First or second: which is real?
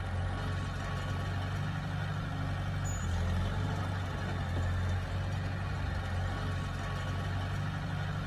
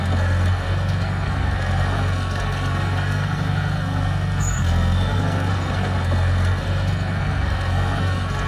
first